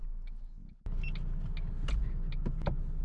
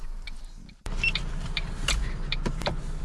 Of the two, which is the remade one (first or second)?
second